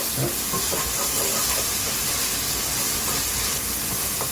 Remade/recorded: recorded